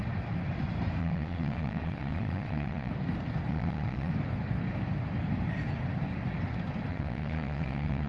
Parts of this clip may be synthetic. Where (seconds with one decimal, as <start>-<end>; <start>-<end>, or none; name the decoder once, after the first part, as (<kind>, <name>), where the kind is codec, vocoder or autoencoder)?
1.0-2.9 (vocoder, Vocos); 3.5-4.1; 6.9-8.1